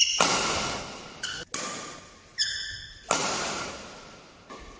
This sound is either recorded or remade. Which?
recorded